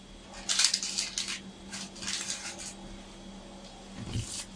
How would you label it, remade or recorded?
recorded